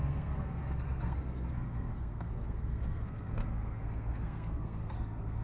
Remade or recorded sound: remade